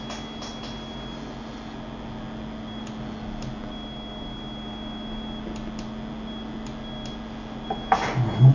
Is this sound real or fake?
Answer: real